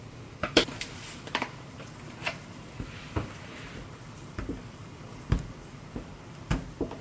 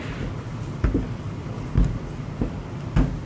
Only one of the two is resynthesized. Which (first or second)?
first